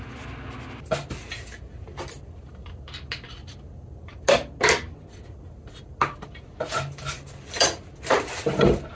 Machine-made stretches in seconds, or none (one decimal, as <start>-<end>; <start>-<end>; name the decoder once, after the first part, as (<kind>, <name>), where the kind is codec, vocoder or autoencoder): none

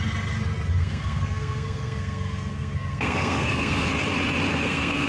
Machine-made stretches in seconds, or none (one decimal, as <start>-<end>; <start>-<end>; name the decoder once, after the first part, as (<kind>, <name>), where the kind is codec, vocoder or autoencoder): 0.8-3.9 (codec, SNAC); 4.5-5.1

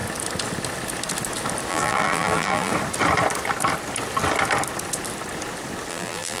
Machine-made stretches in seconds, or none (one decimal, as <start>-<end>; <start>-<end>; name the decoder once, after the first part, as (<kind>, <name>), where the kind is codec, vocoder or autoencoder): 1.7-2.7 (vocoder, BigVGAN v2); 5.9-6.4

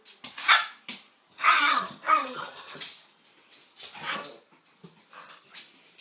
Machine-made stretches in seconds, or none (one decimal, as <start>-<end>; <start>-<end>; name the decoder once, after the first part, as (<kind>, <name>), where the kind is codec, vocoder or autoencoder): 1.3-2.7 (vocoder, HiFi-GAN)

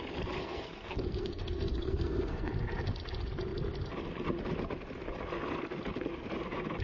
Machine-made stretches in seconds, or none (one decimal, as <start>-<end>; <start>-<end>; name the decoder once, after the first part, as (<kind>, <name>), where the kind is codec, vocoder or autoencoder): 0.4-2.5 (codec, SNAC)

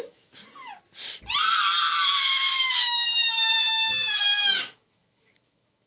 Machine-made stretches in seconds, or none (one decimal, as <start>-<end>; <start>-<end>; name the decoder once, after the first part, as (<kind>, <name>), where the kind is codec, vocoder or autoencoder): 0.0-0.4 (autoencoder, DAC-VAE); 2.1-5.9

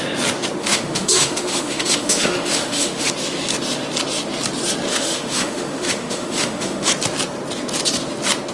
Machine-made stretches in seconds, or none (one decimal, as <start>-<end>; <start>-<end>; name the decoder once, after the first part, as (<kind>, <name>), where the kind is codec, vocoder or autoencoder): 0.6-3.1 (autoencoder, DAC-VAE); 4.9-6.9